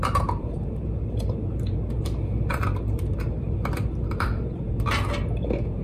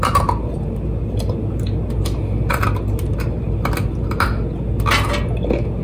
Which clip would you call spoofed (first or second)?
first